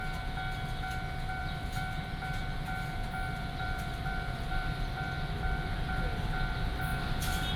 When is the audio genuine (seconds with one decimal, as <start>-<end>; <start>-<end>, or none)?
0.0-1.4; 6.0-6.9